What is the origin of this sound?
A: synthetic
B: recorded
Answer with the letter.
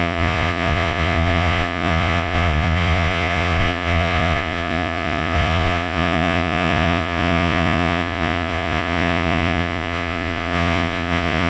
A